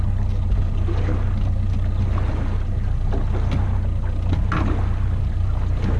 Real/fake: real